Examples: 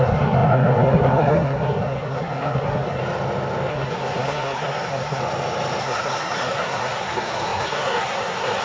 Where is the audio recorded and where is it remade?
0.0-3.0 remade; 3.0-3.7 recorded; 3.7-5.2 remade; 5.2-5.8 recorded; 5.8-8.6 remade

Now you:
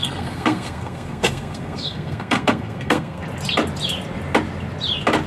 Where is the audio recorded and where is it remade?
0.0-3.2 remade; 3.2-5.3 recorded